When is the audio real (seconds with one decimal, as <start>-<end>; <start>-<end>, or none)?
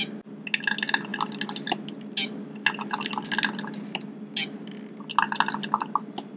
0.0-6.4